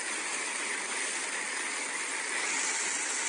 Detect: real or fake real